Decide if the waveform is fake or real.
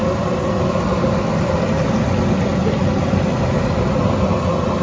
real